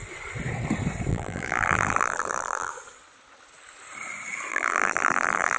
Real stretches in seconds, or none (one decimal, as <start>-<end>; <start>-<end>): 0.0-1.1; 2.7-4.5